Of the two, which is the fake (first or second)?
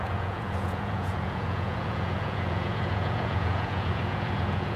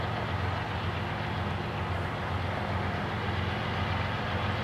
first